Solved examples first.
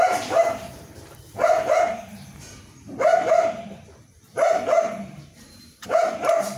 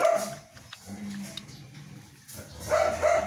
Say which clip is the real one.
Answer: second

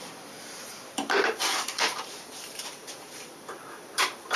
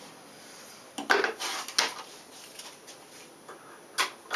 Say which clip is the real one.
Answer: second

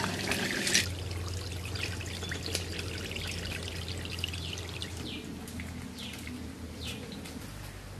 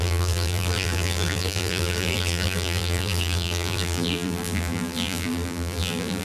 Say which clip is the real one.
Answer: first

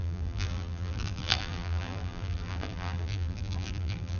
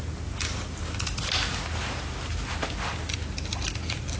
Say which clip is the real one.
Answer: second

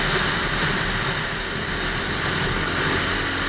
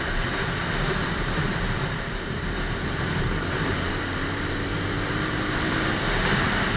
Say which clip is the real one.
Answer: first